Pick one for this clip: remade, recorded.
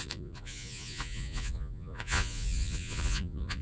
remade